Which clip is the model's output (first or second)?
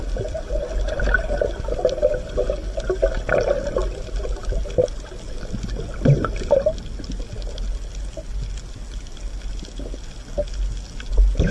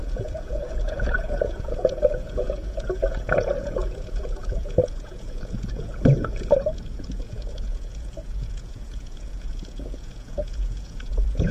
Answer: second